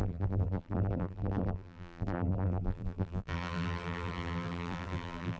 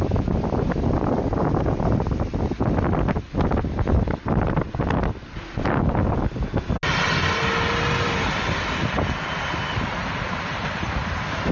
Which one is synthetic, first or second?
first